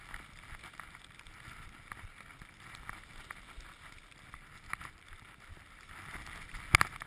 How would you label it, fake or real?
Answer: real